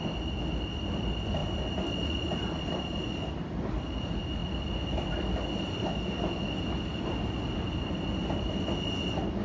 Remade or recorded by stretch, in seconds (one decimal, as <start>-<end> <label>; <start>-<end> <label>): 0.0-9.4 recorded